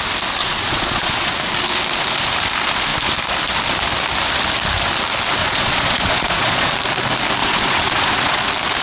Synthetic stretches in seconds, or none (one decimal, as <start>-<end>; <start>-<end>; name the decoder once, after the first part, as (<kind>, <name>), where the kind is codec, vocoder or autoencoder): 0.4-1.3 (vocoder, Vocos); 5.4-6.7; 7.4-8.4